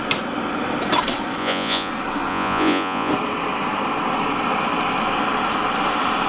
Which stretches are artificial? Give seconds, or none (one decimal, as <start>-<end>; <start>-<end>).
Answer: 1.4-1.9; 2.3-3.1